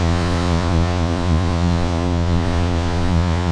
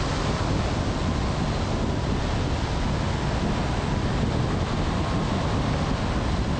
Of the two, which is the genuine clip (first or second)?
second